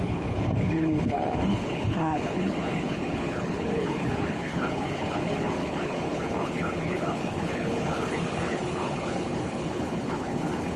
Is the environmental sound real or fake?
fake